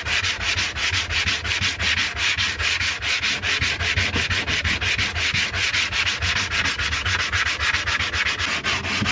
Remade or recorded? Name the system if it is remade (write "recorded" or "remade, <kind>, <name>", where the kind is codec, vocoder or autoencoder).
recorded